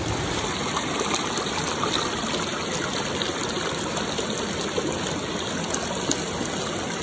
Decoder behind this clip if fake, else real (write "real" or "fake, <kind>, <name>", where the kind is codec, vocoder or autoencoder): real